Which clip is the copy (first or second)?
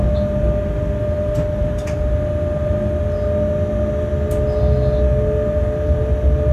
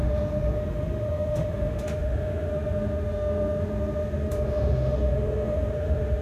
second